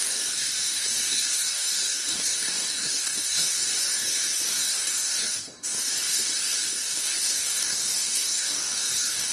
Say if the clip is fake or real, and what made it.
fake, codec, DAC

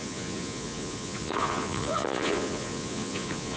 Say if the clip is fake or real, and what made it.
fake, vocoder, Vocos